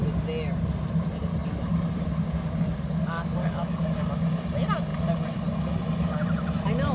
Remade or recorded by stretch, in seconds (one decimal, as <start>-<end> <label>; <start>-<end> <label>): 0.0-3.0 recorded; 3.0-4.1 remade; 4.1-6.9 recorded